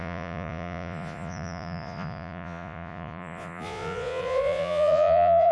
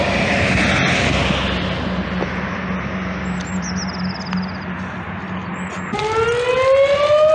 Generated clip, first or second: first